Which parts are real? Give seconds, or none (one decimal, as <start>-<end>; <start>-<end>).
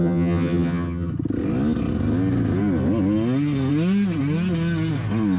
1.1-5.4